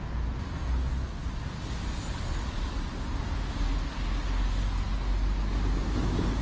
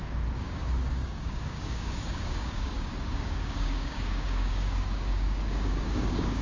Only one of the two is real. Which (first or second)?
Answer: first